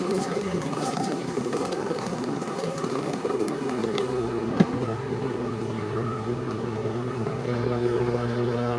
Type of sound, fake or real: fake